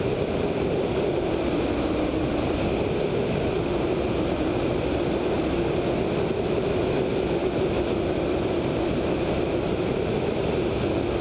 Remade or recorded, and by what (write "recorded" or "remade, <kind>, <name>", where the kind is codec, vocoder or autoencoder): recorded